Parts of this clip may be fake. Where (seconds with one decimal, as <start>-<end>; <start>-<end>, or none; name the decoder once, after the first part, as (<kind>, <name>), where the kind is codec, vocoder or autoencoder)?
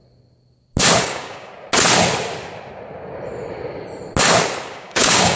1.0-1.5 (codec, DAC); 4.7-5.4